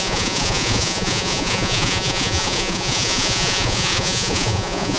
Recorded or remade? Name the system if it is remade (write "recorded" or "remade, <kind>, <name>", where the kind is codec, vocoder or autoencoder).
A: remade, vocoder, Vocos